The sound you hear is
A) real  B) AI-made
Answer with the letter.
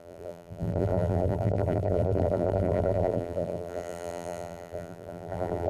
B